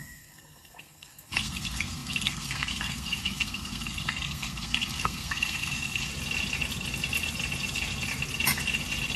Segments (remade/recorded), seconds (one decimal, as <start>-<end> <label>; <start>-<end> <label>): 0.0-6.1 remade; 6.1-9.2 recorded